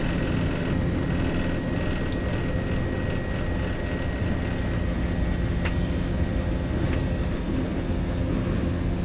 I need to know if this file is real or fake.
real